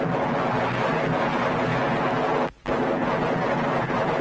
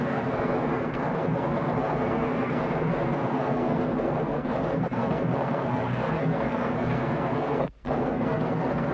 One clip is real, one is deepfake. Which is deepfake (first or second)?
second